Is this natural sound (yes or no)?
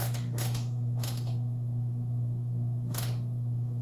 no